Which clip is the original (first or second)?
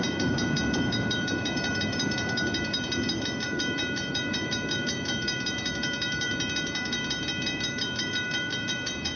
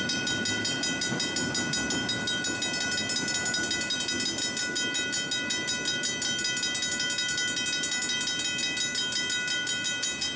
second